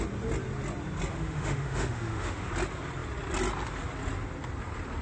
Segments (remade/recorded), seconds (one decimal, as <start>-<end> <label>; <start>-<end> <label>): 0.0-1.1 recorded; 1.1-2.5 remade; 2.5-5.0 recorded